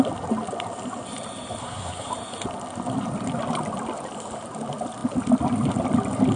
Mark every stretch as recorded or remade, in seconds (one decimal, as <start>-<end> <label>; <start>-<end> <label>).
0.0-1.6 recorded; 1.6-2.1 remade; 2.1-6.4 recorded